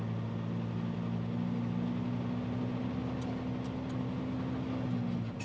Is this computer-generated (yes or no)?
no